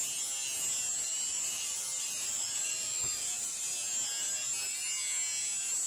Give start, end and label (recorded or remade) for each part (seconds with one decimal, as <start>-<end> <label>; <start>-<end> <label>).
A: 0.0-1.3 recorded; 1.3-3.6 remade; 3.6-5.9 recorded

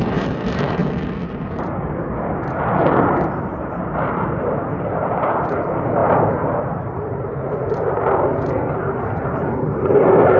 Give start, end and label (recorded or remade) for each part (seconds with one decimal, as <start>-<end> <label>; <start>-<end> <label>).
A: 0.0-0.8 remade; 0.8-2.8 recorded; 2.8-10.4 remade

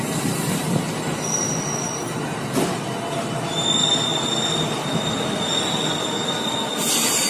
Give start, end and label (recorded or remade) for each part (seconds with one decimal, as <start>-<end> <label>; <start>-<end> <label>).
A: 0.0-7.3 recorded

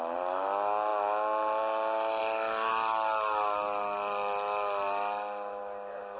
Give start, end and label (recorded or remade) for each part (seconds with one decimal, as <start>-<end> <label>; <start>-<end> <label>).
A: 0.0-6.2 recorded

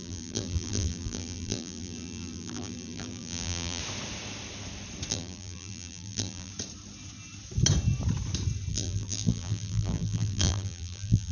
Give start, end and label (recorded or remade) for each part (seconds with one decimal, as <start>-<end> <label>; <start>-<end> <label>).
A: 0.0-3.8 remade; 3.8-5.1 recorded; 5.1-6.5 remade; 6.5-8.7 recorded; 8.7-11.3 remade

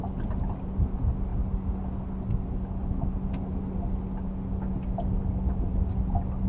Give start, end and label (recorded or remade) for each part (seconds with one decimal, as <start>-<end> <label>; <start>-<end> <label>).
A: 0.0-6.5 recorded

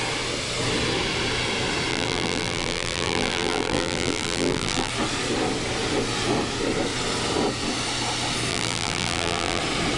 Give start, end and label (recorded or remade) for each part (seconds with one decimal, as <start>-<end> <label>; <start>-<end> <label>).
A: 0.0-1.9 recorded; 1.9-4.9 remade; 4.9-8.5 recorded; 8.5-9.6 remade; 9.6-10.0 recorded